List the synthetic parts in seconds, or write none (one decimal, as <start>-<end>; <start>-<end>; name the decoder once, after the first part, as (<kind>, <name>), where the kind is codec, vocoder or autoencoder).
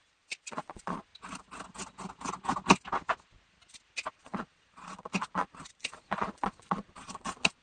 0.0-1.1 (vocoder, Vocos); 4.1-7.6